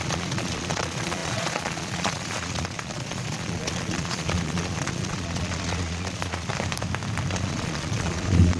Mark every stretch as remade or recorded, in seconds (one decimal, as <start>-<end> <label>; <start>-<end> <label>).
0.0-6.5 remade; 6.5-7.3 recorded; 7.3-8.6 remade